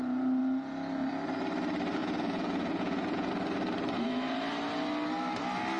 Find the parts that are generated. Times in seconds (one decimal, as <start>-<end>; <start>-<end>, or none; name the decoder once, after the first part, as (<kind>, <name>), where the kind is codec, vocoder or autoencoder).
2.0-3.3 (vocoder, Vocos)